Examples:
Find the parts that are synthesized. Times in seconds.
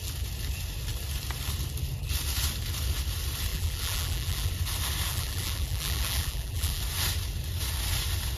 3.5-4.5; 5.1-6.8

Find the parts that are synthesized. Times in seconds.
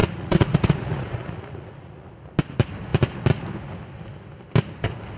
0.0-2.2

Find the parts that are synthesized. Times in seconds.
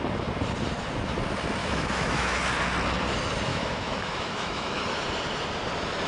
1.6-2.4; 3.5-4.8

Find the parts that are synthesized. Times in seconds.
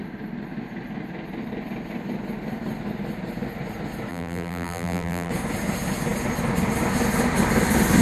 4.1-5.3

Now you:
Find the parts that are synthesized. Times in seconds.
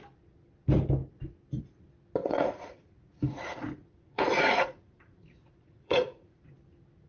2.2-6.5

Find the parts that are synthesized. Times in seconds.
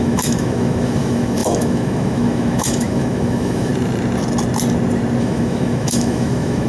0.0-3.7; 5.2-6.7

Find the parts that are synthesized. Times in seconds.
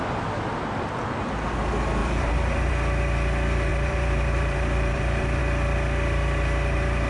2.0-2.7; 3.7-5.4